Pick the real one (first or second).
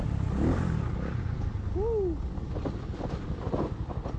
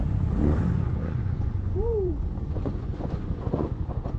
first